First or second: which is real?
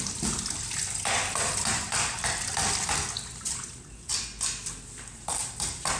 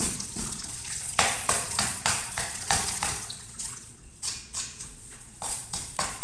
first